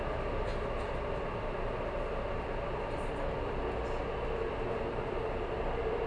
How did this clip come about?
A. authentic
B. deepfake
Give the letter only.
A